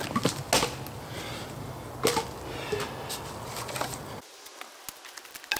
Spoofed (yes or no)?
no